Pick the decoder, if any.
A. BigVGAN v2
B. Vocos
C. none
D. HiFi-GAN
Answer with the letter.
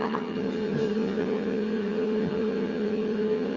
D